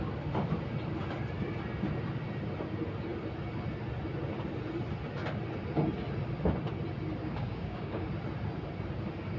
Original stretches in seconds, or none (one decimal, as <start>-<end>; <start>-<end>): 0.0-7.2; 8.1-9.4